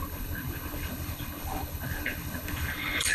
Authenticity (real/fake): fake